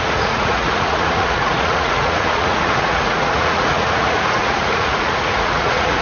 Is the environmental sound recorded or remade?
remade